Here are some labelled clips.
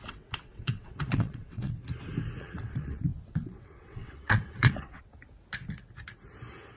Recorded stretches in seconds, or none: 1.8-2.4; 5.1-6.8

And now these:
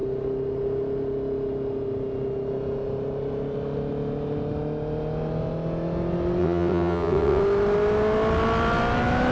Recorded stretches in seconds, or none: 0.0-6.4; 7.4-9.3

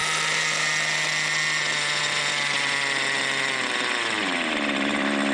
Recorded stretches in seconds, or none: 0.0-5.3

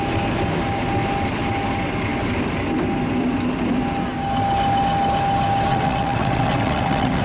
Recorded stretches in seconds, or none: 0.0-5.7